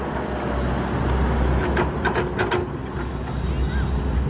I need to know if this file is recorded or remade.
recorded